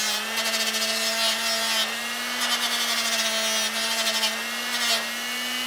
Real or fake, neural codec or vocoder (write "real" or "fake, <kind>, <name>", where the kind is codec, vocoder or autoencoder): real